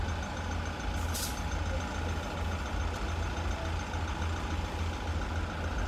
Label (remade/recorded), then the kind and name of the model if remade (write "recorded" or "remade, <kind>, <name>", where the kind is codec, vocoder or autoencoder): recorded